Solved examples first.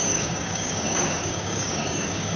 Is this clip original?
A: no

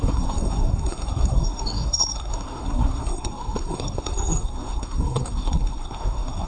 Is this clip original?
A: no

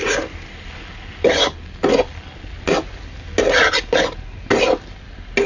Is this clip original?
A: yes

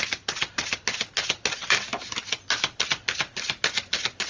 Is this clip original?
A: yes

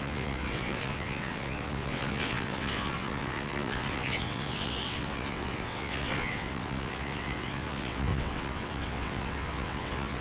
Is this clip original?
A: no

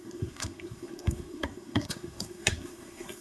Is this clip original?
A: no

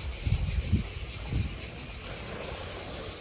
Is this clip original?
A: yes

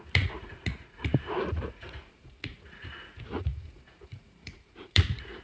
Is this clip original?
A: no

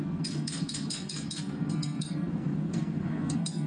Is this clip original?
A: no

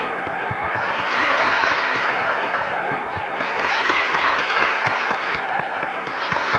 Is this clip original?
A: no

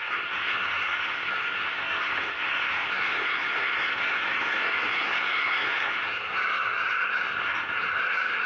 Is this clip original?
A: no